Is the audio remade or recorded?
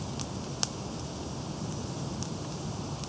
recorded